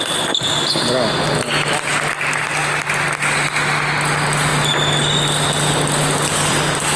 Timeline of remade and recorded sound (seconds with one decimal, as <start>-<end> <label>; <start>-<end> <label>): 0.0-7.0 recorded